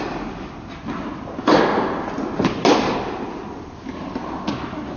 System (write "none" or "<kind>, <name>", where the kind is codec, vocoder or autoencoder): none